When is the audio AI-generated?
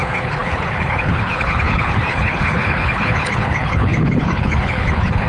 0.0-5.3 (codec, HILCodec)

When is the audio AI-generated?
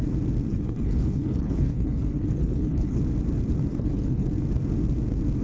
0.5-3.0 (codec, HILCodec); 3.7-4.3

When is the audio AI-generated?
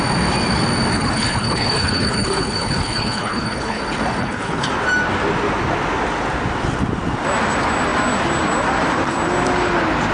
0.9-3.8 (codec, HILCodec); 4.2-4.7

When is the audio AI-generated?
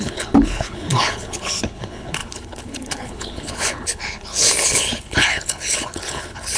0.0-6.6 (codec, HILCodec)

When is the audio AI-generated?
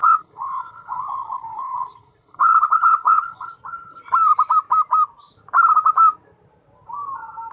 0.0-3.5 (codec, HILCodec)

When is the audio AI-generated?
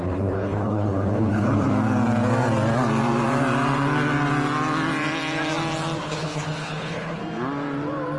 0.0-1.7 (codec, HILCodec); 6.0-7.2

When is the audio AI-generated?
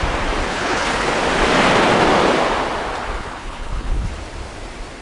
0.5-1.1 (codec, HILCodec); 3.2-4.1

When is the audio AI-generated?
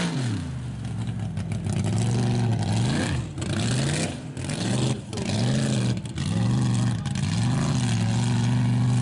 none